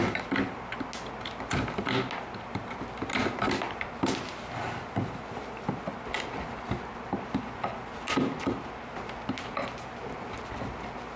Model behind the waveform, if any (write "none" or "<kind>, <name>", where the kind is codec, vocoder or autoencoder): none